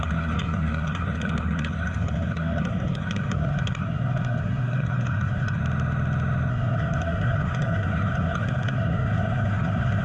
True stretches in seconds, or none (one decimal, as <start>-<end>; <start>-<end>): 5.6-6.5